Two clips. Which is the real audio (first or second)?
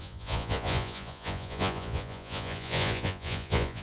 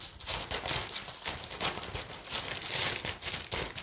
second